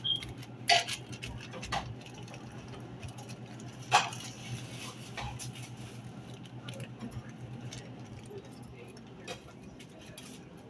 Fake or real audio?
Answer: real